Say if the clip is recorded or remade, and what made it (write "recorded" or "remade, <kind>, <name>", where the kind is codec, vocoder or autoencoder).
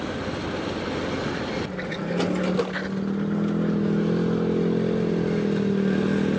recorded